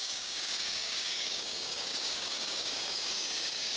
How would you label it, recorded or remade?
remade